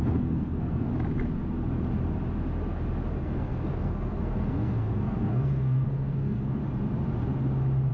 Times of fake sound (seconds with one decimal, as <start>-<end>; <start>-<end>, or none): 0.0-0.9; 3.2-6.6